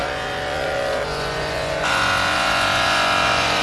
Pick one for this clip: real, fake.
fake